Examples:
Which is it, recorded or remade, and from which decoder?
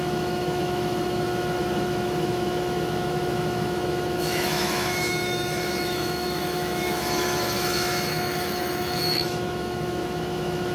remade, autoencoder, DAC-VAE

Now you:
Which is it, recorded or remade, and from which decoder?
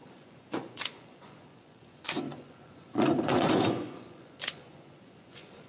remade, vocoder, Vocos